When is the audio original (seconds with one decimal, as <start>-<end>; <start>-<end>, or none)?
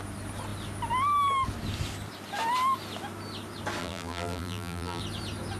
0.0-3.8; 5.0-5.6